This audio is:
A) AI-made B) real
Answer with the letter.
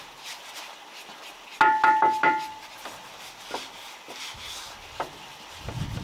B